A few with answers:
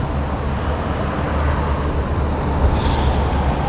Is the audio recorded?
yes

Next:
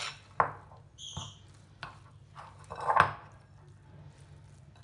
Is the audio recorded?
yes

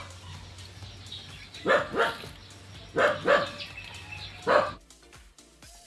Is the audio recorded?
yes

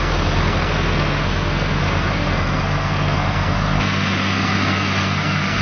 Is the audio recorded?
no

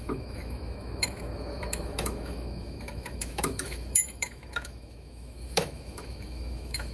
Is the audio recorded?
no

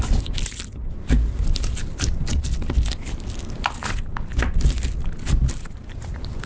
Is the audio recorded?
yes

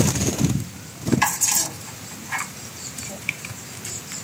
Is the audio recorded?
no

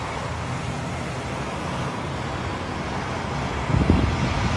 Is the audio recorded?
yes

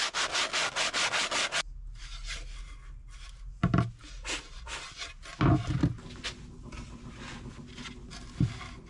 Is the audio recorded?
yes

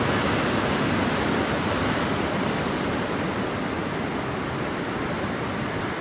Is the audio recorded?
yes